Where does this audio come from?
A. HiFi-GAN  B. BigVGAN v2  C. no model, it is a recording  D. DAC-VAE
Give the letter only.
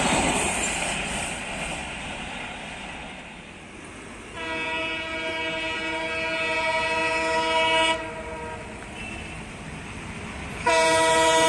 C